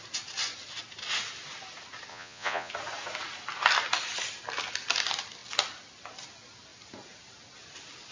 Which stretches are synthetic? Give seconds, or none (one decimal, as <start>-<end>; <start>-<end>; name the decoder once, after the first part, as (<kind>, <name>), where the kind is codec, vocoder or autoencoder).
2.1-2.7 (vocoder, Vocos)